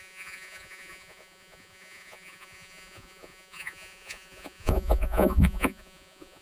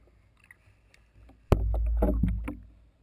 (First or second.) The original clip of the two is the second